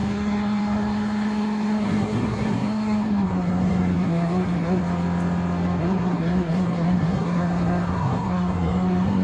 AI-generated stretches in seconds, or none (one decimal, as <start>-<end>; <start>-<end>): 0.0-4.8; 5.8-9.2